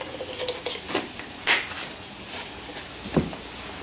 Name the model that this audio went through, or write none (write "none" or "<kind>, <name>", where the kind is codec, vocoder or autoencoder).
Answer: none